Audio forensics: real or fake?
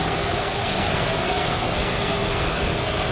fake